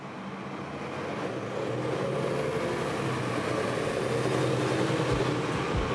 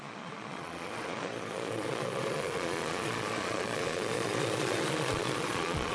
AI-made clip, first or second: second